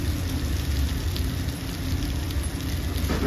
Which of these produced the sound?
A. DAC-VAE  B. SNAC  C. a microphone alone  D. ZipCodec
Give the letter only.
C